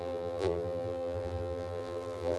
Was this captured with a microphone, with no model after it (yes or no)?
no